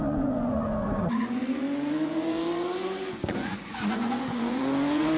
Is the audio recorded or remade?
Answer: remade